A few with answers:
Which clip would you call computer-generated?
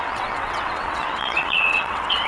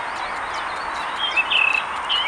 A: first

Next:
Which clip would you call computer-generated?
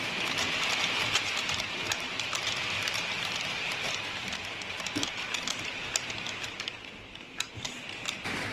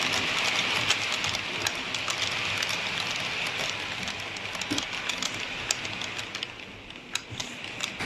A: first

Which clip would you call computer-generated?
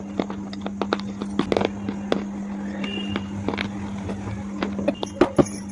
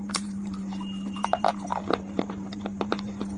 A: second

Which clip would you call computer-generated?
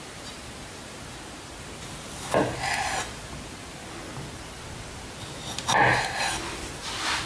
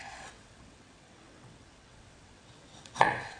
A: second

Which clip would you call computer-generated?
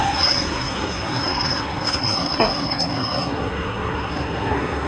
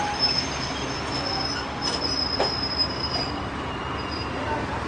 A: first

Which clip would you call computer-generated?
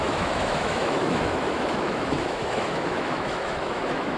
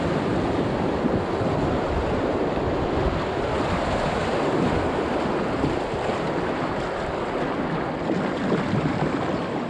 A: first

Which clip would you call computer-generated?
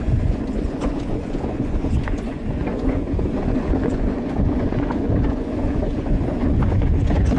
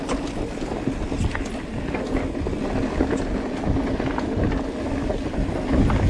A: first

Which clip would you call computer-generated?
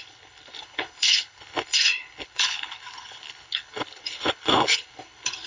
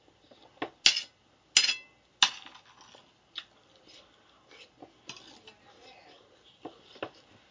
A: first